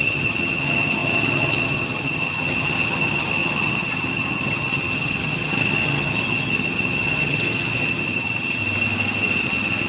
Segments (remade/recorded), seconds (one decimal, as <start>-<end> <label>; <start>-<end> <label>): 0.0-8.6 remade; 8.6-9.4 recorded; 9.4-9.9 remade